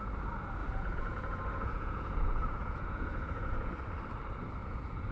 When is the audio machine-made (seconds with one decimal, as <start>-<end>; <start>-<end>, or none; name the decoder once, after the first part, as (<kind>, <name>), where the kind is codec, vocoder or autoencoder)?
0.6-3.7 (vocoder, Vocos); 4.6-5.1